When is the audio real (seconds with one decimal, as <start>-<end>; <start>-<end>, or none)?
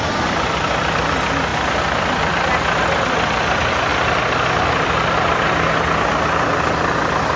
0.0-7.4